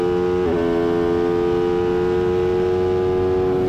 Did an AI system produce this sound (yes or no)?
no